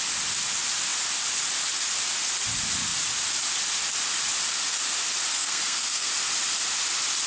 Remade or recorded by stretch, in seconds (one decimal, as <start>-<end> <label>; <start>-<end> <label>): 0.0-5.3 recorded; 5.3-6.1 remade; 6.1-7.3 recorded

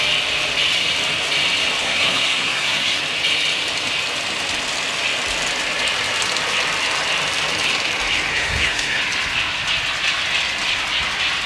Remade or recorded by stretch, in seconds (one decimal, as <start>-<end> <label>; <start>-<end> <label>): 0.0-1.8 recorded; 1.8-3.0 remade; 3.0-8.3 recorded; 8.3-9.0 remade; 9.0-11.5 recorded

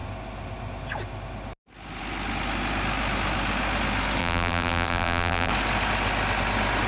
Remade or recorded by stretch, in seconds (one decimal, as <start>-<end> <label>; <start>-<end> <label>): 0.0-4.2 recorded; 4.2-5.5 remade; 5.5-6.9 recorded